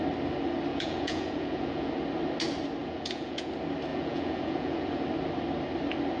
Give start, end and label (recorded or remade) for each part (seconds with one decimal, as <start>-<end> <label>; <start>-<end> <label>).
0.0-0.7 recorded; 0.7-1.9 remade; 1.9-2.8 recorded; 2.8-3.5 remade; 3.5-3.9 recorded; 3.9-5.0 remade; 5.0-6.2 recorded